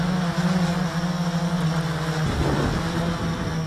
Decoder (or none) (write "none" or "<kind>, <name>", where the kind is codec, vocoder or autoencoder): none